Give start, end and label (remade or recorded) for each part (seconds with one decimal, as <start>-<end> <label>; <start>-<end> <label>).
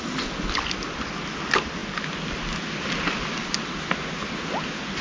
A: 0.0-5.0 recorded